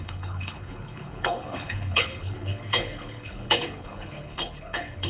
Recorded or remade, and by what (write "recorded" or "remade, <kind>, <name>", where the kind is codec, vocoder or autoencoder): remade, codec, HILCodec